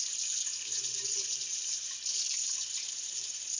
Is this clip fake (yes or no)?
yes